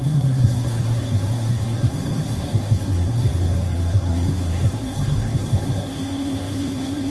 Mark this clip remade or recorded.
remade